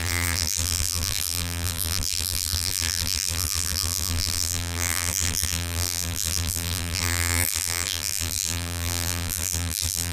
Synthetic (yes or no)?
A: yes